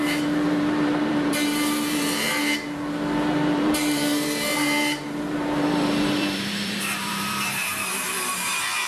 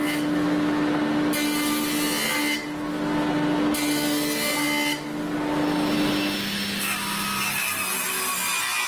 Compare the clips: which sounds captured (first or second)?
second